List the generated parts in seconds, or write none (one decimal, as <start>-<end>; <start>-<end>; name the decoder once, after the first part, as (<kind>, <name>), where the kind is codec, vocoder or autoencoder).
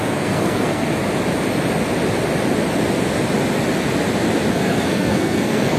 0.0-1.0 (codec, SNAC); 4.5-5.8